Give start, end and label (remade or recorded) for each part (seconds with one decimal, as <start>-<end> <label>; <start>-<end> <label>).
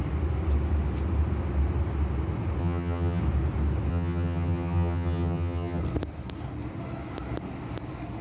0.0-2.6 recorded; 2.6-3.2 remade; 3.2-3.9 recorded; 3.9-5.8 remade; 5.8-8.2 recorded